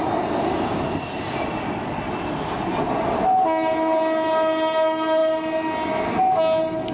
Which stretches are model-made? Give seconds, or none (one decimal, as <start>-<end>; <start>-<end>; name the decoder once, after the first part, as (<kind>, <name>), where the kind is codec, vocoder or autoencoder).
none